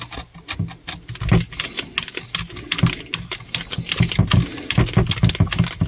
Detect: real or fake real